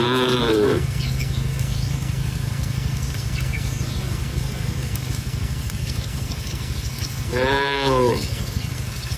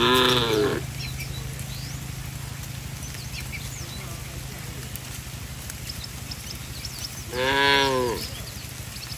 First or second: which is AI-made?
first